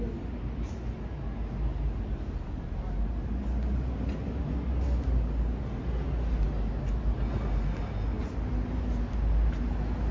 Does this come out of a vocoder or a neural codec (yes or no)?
no